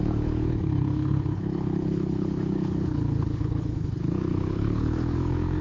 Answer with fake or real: fake